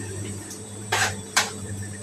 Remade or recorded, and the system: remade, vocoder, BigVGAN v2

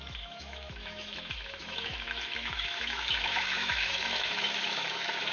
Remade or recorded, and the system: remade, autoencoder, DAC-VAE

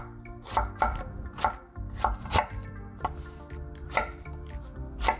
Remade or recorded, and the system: recorded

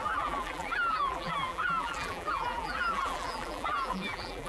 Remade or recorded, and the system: remade, vocoder, BigVGAN v2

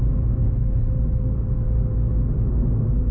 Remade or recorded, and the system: recorded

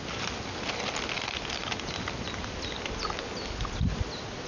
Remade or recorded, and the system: recorded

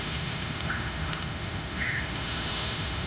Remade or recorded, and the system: remade, autoencoder, DAC-VAE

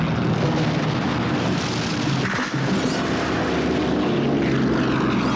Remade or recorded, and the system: recorded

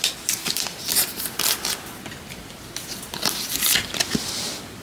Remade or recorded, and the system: recorded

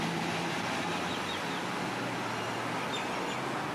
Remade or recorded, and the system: recorded